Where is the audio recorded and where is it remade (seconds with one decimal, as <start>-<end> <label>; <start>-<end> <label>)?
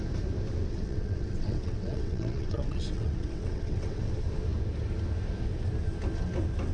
0.0-0.7 recorded; 0.7-4.1 remade; 4.1-6.7 recorded